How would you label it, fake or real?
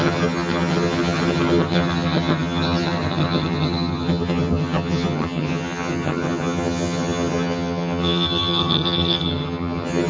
fake